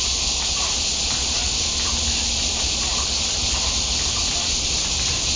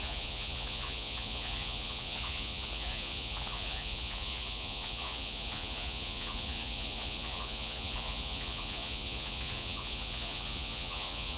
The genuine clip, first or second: first